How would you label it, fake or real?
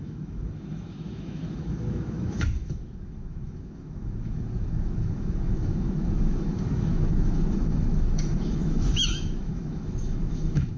fake